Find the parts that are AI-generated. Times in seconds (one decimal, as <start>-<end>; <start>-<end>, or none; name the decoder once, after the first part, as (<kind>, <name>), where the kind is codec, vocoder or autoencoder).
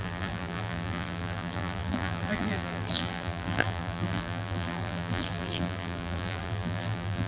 0.0-7.3 (vocoder, BigVGAN v2)